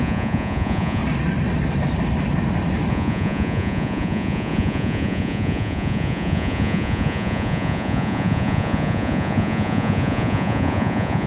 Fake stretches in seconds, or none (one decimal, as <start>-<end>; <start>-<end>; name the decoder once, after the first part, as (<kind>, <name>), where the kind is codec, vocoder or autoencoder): 0.0-1.0 (vocoder, Vocos); 2.9-11.3